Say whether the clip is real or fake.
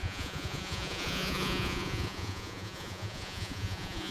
fake